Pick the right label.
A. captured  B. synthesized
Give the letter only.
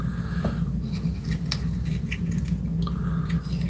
A